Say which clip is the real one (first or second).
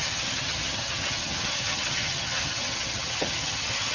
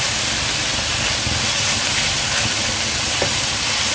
second